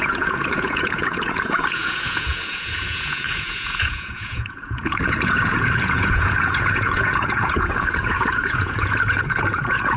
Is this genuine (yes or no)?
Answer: no